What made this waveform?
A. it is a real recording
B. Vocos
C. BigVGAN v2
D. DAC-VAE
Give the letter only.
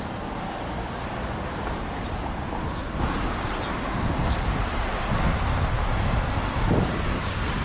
C